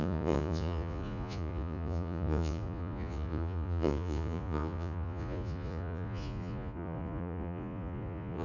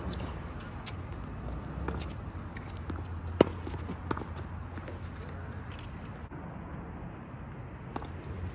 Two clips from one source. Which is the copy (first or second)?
first